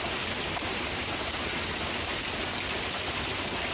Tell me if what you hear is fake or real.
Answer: real